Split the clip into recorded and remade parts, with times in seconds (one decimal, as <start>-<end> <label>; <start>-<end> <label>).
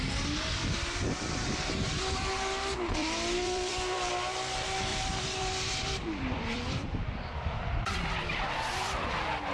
0.0-0.6 recorded; 0.6-2.0 remade; 2.0-3.0 recorded; 3.0-4.1 remade; 4.1-4.9 recorded; 4.9-9.1 remade; 9.1-9.5 recorded